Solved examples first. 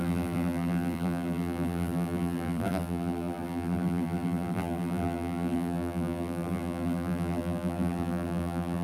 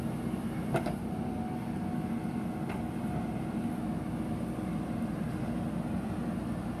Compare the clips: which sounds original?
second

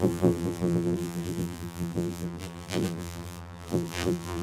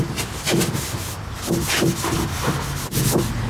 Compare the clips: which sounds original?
second